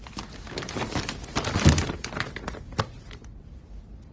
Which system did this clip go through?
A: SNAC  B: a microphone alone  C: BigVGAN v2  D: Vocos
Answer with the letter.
B